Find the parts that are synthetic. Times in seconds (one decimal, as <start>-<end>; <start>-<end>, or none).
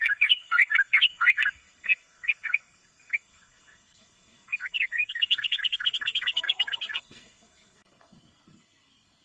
0.0-9.2